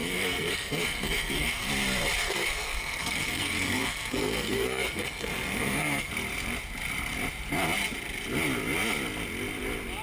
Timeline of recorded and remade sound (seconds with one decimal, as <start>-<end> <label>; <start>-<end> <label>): 0.0-1.7 remade; 1.7-2.2 recorded; 2.2-6.1 remade; 6.1-10.0 recorded